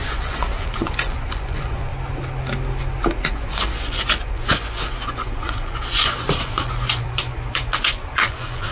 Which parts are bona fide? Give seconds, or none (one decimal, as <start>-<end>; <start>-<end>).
1.9-3.3